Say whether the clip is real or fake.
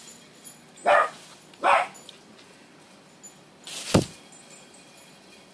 real